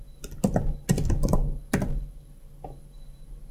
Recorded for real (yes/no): yes